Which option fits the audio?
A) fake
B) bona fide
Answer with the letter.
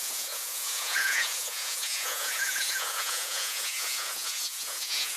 A